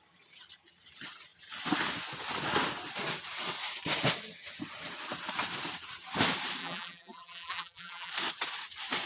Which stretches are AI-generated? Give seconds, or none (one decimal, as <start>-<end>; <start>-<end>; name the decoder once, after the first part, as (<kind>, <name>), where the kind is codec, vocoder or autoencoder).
6.6-8.1 (vocoder, BigVGAN v2)